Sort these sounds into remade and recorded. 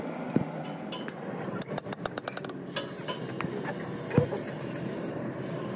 recorded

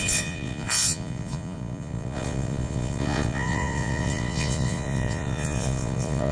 remade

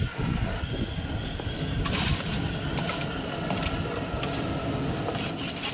recorded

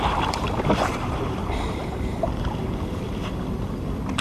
remade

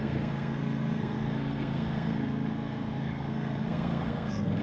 remade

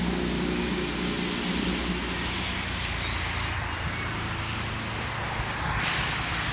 recorded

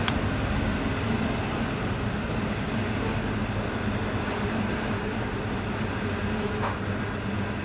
recorded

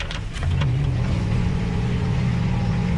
remade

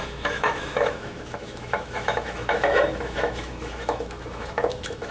remade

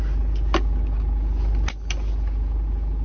recorded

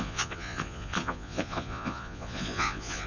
remade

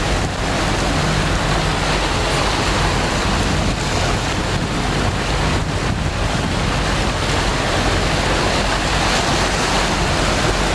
recorded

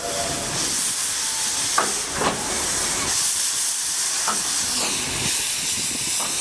recorded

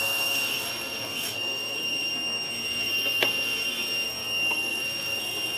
remade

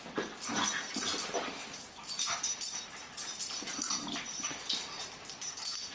recorded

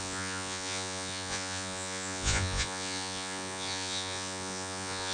remade